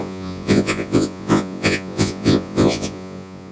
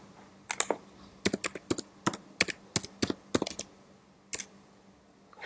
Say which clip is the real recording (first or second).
second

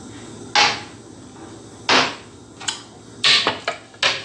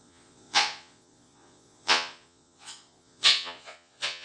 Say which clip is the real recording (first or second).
first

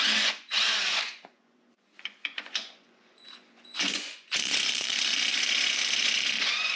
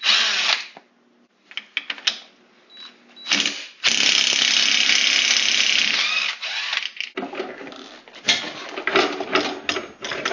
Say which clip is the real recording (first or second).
second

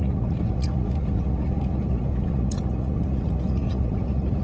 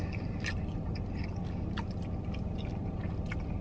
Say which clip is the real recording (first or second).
second